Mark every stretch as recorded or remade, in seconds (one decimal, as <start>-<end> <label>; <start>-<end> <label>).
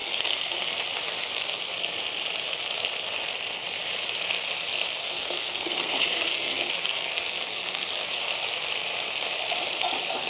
0.0-0.5 remade; 0.5-5.0 recorded; 5.0-7.9 remade; 7.9-10.3 recorded